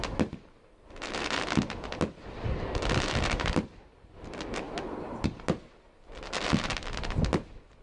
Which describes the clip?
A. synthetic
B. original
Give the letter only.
B